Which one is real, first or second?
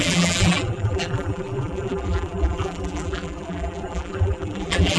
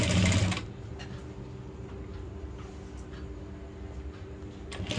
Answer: second